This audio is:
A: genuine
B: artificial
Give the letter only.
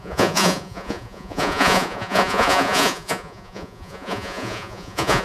B